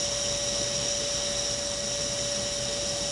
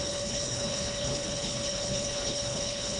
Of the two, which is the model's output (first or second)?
second